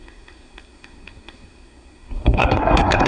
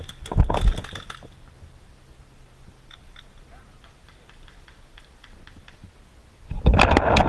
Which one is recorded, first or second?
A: second